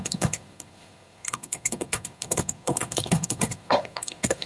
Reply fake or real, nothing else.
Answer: fake